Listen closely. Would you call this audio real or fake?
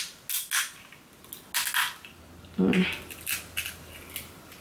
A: real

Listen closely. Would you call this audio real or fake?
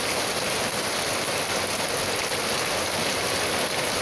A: real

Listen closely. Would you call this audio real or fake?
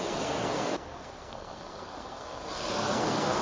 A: fake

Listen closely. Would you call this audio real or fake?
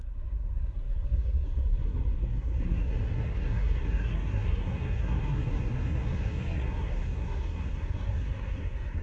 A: fake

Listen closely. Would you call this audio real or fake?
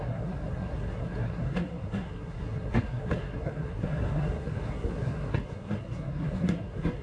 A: fake